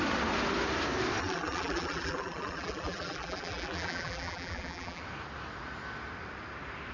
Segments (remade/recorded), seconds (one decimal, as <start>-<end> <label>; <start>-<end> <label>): 0.0-1.2 recorded; 1.2-5.0 remade; 5.0-6.9 recorded